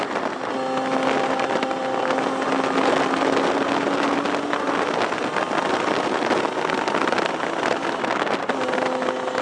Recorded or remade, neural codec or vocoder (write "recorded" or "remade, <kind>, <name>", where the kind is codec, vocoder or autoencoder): recorded